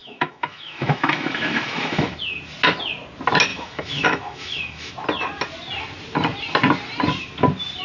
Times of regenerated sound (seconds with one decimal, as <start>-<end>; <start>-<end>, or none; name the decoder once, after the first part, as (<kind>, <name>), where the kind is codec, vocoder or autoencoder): 0.0-2.2 (autoencoder, DAC-VAE); 3.5-4.9